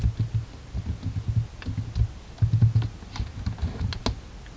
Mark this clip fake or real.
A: real